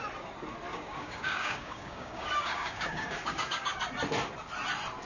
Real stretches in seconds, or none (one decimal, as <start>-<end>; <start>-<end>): 0.0-0.7; 3.8-5.1

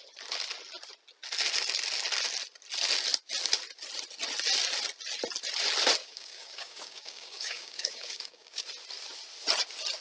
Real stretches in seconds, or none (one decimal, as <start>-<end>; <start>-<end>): 0.0-6.0; 8.6-10.0

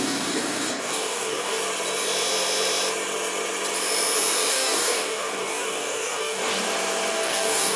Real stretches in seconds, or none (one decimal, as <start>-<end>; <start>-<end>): 1.6-4.5; 6.4-7.1

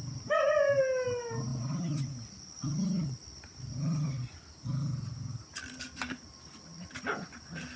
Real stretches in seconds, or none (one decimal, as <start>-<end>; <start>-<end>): 0.0-7.8

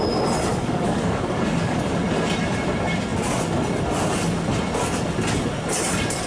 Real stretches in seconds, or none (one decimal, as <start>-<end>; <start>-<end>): 0.0-0.5; 1.8-6.3

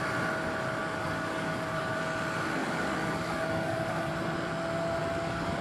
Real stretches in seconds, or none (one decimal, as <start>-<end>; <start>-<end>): 0.0-0.8; 2.0-2.6; 4.1-5.0